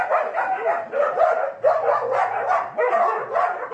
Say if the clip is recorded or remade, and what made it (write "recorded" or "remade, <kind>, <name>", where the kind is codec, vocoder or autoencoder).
recorded